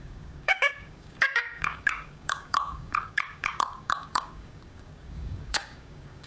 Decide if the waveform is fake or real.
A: fake